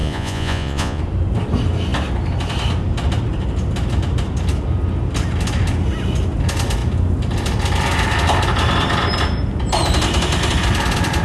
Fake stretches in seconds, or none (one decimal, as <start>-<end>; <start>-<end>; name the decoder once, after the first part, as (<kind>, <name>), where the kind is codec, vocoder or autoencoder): 0.0-1.0 (vocoder, Vocos)